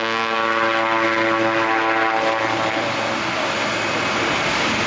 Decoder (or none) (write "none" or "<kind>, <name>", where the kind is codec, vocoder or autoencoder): none